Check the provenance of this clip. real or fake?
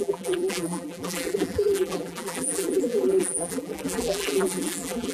fake